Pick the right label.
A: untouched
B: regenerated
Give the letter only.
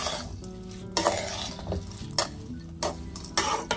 A